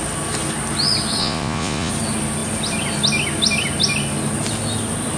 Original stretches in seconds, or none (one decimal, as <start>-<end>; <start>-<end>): 0.0-1.2; 1.9-5.2